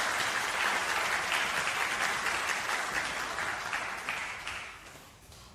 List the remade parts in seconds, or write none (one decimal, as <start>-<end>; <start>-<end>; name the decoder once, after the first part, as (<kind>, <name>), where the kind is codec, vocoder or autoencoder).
4.2-5.5 (codec, DAC)